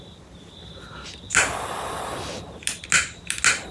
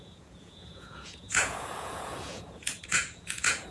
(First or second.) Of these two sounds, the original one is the first